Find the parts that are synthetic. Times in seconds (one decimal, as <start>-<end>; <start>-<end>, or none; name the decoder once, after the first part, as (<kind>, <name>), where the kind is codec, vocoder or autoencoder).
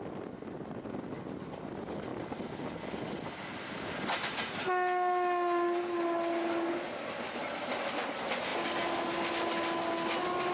none